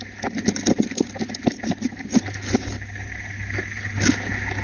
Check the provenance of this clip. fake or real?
real